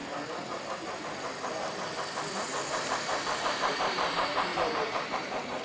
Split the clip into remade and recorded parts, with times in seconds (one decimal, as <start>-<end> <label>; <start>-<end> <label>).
0.0-3.4 recorded; 3.4-5.6 remade